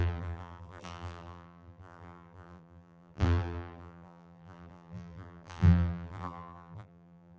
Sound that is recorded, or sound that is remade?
remade